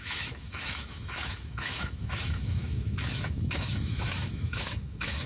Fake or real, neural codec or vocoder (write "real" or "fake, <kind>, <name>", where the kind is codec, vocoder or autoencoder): fake, autoencoder, DAC-VAE